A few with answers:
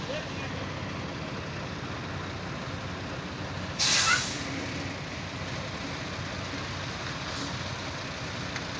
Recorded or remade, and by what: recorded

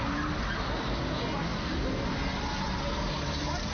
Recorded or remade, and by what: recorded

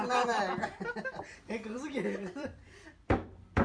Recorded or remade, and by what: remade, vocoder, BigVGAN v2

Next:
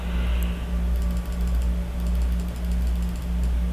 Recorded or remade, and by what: recorded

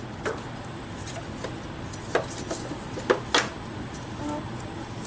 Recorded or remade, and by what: recorded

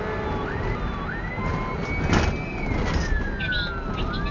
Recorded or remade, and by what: recorded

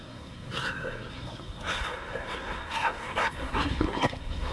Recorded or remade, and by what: remade, codec, SNAC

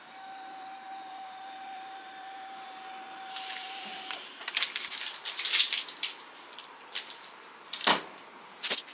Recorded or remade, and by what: remade, vocoder, BigVGAN v2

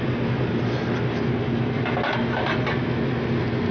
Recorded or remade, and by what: recorded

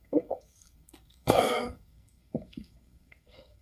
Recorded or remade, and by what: remade, codec, SNAC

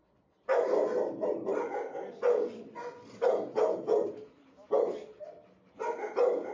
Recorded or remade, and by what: recorded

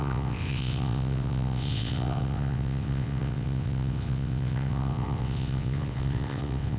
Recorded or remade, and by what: remade, vocoder, WaveNeXt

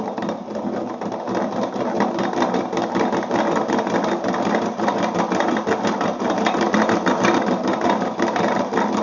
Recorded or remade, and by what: recorded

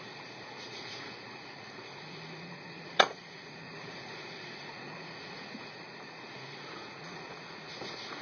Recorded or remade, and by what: remade, vocoder, Vocos